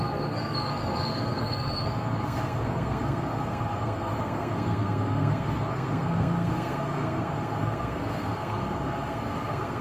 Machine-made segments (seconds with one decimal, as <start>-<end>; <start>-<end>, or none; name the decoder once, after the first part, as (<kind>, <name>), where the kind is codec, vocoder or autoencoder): 0.0-9.8 (codec, SNAC)